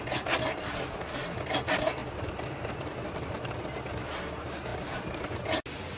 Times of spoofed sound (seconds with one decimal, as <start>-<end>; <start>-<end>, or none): 2.0-3.5; 4.7-5.2